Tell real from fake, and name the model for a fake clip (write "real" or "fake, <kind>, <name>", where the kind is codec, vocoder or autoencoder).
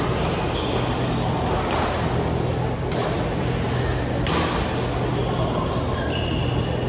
real